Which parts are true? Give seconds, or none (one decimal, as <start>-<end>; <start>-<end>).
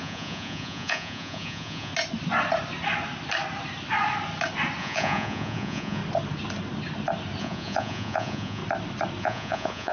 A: 1.9-4.8; 6.0-7.4; 8.6-9.2